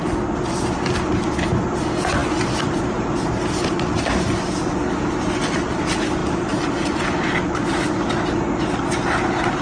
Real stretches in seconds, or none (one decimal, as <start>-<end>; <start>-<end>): 0.0-9.6